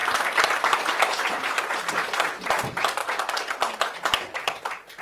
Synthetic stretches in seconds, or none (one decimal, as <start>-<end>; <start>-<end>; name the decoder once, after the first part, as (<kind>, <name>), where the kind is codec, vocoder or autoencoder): 0.0-3.0 (vocoder, BigVGAN v2); 3.8-5.0